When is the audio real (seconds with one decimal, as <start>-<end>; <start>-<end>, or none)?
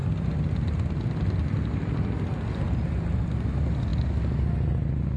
0.0-5.2